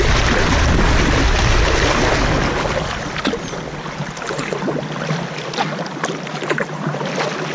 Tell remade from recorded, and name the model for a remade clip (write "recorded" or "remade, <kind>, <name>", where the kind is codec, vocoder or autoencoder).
recorded